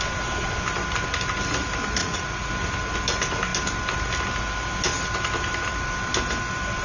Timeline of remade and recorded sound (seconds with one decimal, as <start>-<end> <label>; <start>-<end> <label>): 0.0-2.0 recorded; 2.0-2.5 remade; 2.5-6.8 recorded